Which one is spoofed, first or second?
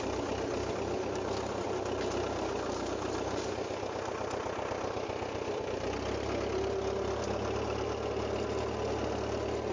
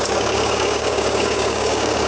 second